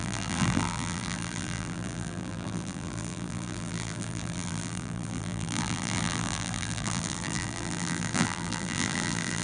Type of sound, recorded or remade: remade